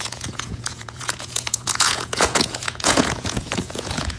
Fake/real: fake